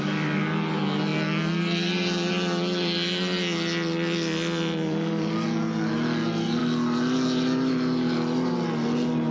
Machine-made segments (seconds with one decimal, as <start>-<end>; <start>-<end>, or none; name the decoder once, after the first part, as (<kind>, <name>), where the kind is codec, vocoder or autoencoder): none